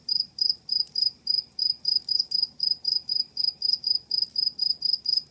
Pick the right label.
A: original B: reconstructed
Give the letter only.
B